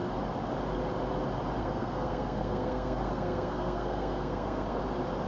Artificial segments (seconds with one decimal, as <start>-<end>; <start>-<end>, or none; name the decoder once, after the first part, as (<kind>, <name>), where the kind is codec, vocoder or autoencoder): 1.6-4.8 (codec, SNAC)